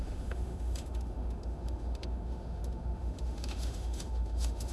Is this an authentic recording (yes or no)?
no